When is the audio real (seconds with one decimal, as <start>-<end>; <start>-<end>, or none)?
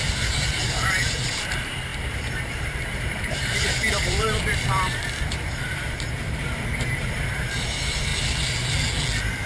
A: 8.1-9.5